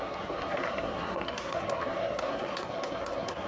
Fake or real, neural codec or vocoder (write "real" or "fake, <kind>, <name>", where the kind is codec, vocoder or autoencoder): fake, codec, SNAC